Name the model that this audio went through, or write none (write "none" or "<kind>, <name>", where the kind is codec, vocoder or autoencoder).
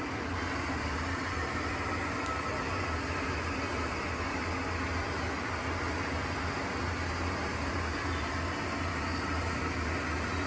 none